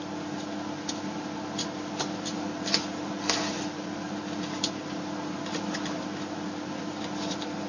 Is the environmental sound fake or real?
real